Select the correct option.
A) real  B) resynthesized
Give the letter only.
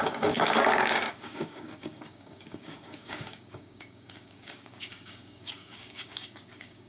B